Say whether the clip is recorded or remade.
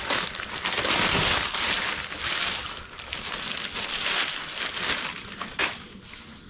recorded